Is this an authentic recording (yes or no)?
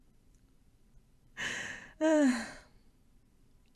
no